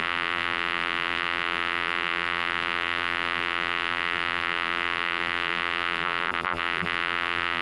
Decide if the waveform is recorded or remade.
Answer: remade